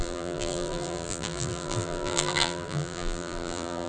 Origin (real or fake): fake